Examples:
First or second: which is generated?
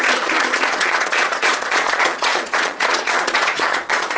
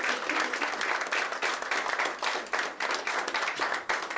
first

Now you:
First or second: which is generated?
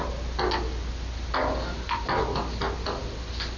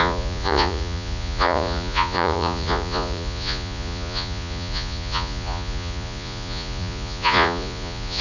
second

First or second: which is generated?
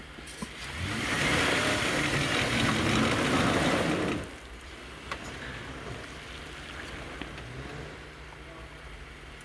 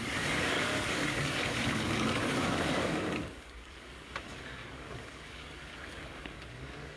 second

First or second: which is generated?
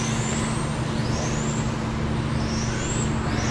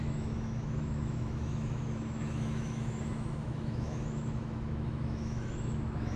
second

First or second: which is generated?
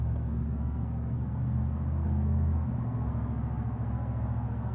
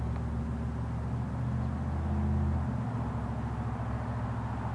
first